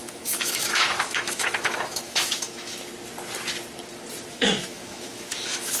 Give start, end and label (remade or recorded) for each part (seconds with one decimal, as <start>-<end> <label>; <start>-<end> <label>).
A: 0.0-2.9 remade; 2.9-4.3 recorded; 4.3-5.8 remade